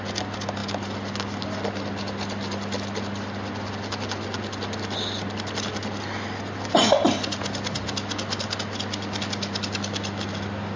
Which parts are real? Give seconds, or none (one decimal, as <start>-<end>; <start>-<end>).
0.0-10.8